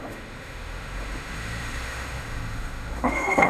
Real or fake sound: fake